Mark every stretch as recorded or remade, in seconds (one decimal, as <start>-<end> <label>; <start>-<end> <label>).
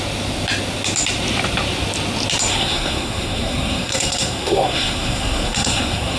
0.0-2.5 recorded; 2.5-6.2 remade